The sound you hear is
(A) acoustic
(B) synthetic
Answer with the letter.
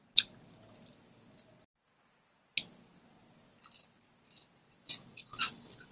A